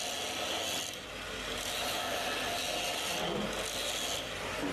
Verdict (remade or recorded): recorded